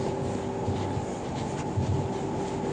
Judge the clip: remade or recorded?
recorded